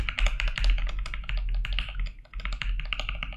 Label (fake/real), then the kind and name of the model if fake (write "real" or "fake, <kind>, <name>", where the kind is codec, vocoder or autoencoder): real